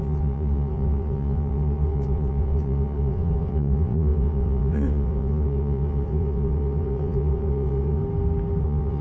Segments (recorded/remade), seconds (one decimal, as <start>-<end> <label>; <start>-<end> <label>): 0.0-8.0 remade; 8.0-8.6 recorded; 8.6-9.0 remade